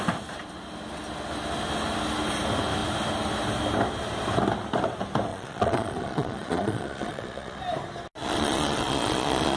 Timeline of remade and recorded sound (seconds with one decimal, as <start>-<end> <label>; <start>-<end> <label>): 0.0-5.3 recorded; 5.3-7.6 remade; 7.6-8.2 recorded; 8.2-9.6 remade